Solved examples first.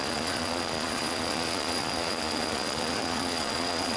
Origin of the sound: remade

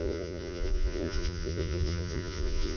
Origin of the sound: remade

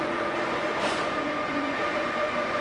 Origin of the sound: remade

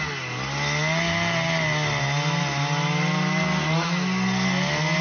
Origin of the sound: recorded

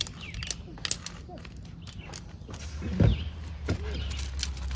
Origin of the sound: recorded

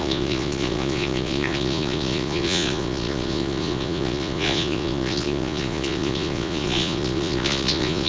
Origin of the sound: remade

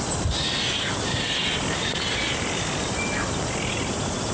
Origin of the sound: recorded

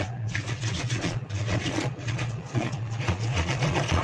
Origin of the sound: remade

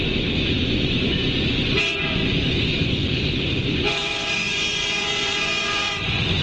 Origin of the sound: remade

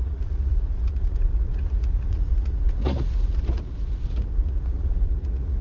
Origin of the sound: remade